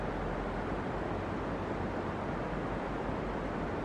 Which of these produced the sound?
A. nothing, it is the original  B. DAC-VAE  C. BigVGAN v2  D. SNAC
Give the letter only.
A